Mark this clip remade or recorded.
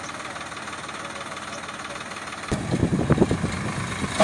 recorded